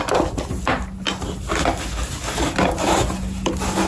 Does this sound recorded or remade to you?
recorded